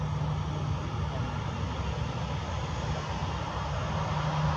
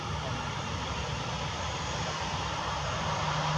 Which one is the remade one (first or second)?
second